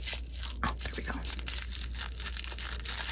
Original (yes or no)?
yes